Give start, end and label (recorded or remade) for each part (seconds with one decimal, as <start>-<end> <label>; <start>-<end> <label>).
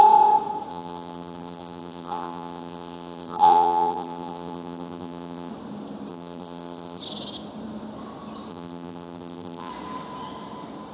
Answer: 0.0-0.7 recorded; 0.7-5.5 remade; 5.5-6.1 recorded; 6.1-7.0 remade; 7.0-8.5 recorded; 8.5-9.7 remade; 9.7-10.9 recorded